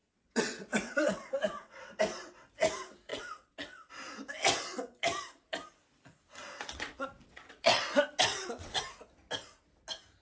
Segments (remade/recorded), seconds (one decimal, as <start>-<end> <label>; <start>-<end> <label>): 0.0-2.0 remade; 2.0-3.1 recorded; 3.1-3.9 remade; 3.9-6.4 recorded; 6.4-7.8 remade; 7.8-8.3 recorded; 8.3-8.8 remade; 8.8-10.2 recorded